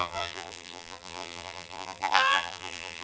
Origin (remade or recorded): remade